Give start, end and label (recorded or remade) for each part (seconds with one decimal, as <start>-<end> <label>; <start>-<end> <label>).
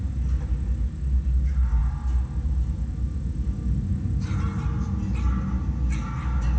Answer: 0.0-6.6 recorded